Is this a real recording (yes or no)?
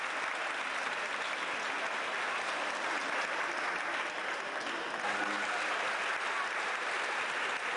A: yes